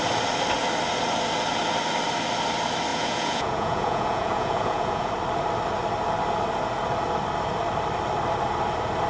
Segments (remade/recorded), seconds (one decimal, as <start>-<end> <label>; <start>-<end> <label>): 0.0-2.9 recorded; 2.9-5.1 remade; 5.1-9.1 recorded